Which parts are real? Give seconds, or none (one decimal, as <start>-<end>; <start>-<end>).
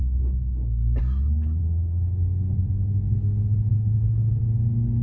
0.0-1.6; 2.2-3.7; 4.4-5.0